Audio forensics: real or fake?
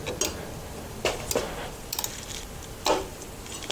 real